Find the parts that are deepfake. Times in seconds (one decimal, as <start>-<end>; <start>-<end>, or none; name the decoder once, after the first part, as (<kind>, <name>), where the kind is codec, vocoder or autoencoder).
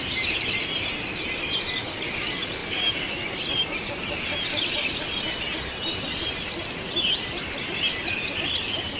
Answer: none